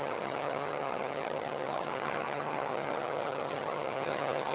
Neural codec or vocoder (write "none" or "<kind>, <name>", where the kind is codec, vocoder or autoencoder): vocoder, HiFi-GAN